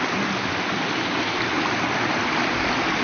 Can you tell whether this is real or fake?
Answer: real